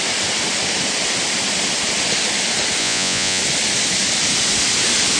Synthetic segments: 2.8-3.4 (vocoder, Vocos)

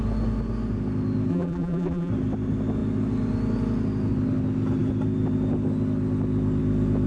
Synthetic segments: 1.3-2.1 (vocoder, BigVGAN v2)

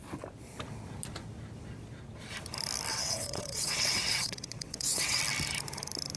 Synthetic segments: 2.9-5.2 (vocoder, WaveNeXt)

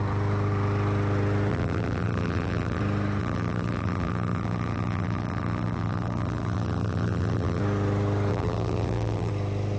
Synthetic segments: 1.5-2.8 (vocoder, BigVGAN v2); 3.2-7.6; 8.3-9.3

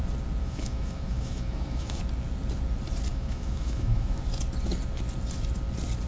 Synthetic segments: 0.4-2.0 (autoencoder, DAC-VAE); 3.1-4.2

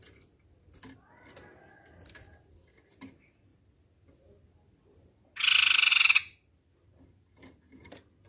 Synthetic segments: none